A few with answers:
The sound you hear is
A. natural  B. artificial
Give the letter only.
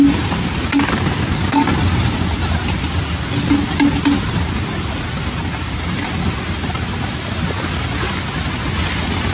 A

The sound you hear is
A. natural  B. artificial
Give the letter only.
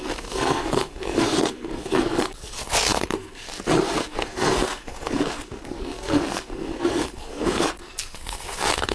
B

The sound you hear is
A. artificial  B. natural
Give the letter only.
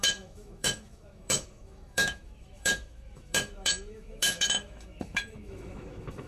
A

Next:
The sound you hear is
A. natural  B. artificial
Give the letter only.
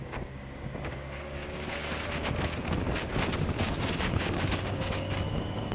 B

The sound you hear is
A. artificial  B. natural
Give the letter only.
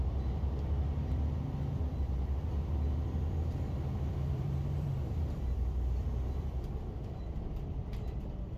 A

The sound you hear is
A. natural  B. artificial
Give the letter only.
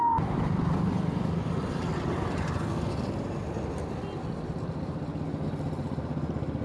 A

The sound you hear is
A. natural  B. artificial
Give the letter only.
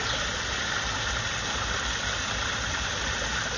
A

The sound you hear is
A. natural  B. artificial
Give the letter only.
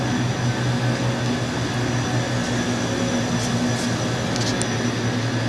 A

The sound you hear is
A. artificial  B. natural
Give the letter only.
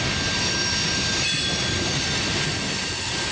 B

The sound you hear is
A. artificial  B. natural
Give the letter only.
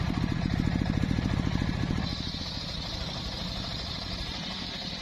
A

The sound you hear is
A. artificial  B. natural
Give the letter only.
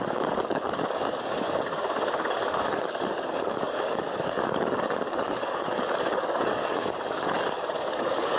A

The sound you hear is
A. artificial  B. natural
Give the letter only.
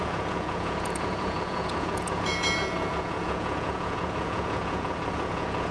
A